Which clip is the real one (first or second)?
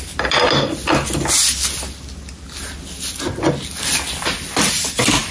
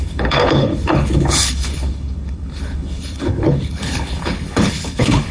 first